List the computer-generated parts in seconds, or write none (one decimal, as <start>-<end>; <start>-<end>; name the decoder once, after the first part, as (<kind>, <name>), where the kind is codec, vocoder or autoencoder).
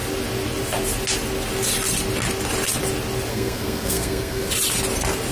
3.3-4.5 (codec, SNAC)